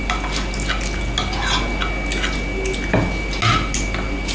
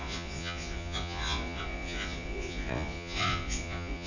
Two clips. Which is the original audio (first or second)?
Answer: first